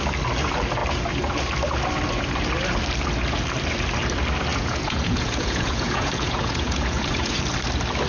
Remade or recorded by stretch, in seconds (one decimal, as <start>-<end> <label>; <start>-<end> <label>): 0.0-4.5 recorded; 4.5-7.4 remade; 7.4-8.1 recorded